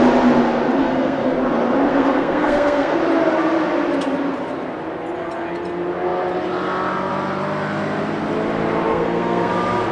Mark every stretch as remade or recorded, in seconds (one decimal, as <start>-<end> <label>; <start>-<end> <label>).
0.0-0.8 recorded; 0.8-1.3 remade; 1.3-1.9 recorded; 1.9-3.0 remade; 3.0-8.9 recorded; 8.9-9.5 remade; 9.5-9.9 recorded